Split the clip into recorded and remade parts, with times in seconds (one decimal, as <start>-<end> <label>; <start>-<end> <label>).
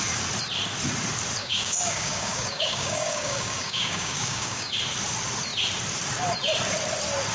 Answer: 0.0-1.4 recorded; 1.4-4.7 remade; 4.7-7.3 recorded